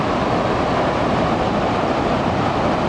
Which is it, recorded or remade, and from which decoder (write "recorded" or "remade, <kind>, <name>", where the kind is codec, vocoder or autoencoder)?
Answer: recorded